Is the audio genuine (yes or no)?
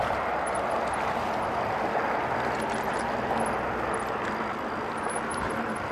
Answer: yes